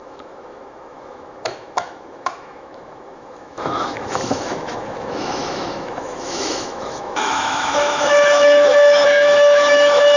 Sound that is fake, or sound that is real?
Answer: fake